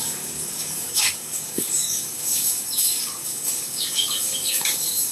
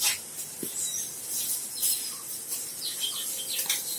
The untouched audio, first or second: second